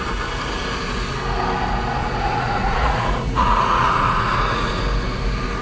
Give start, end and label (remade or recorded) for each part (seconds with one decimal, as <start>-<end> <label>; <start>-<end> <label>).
0.0-2.0 recorded; 2.0-4.8 remade; 4.8-5.6 recorded